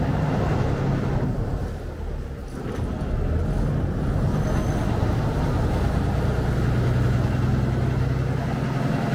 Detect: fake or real real